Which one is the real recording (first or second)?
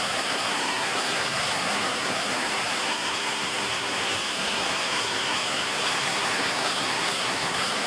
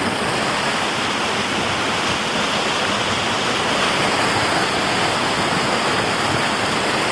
second